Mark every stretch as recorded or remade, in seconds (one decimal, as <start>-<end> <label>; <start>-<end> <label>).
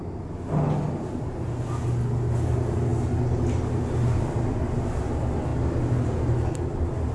0.0-7.1 recorded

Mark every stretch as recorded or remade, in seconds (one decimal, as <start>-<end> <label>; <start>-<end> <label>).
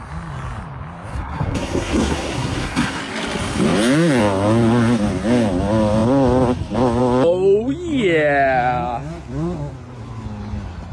0.0-1.1 recorded; 1.1-3.0 remade; 3.0-10.9 recorded